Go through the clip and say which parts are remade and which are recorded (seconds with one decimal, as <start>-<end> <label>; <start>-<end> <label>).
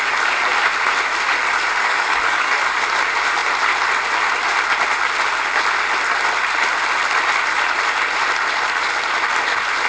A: 0.0-1.8 recorded; 1.8-2.7 remade; 2.7-9.9 recorded